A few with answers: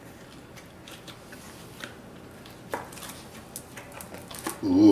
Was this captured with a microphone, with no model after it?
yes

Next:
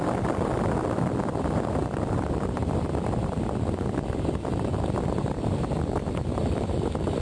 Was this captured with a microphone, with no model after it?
no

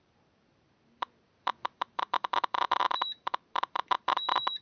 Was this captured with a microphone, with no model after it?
no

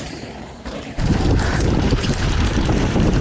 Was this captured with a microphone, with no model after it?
no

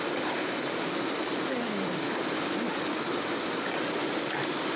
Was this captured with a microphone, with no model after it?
no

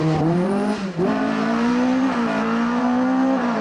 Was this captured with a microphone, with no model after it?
no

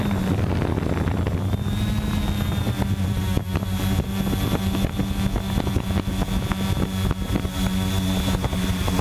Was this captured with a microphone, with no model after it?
yes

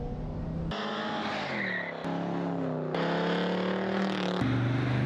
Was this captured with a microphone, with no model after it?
yes